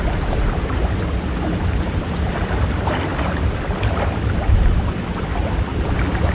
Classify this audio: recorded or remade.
recorded